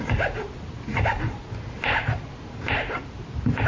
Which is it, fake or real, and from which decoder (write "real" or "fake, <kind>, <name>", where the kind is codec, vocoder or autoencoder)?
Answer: real